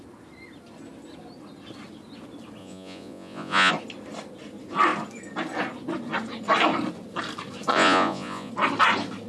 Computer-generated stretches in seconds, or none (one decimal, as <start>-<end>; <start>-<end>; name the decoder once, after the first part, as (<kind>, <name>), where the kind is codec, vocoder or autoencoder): 2.6-3.7 (vocoder, Vocos); 7.7-8.5